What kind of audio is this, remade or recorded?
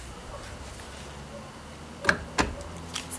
recorded